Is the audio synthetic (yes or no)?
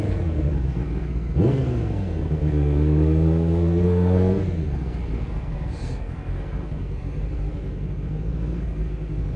yes